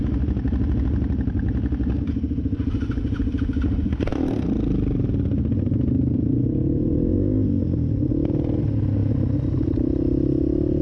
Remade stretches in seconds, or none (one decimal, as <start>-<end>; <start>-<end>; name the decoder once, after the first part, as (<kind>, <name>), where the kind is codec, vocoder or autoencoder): none